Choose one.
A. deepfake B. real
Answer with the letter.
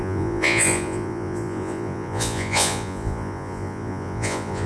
A